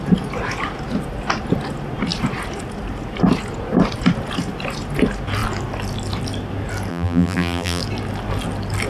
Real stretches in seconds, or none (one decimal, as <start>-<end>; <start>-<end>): 0.0-6.9; 7.8-8.9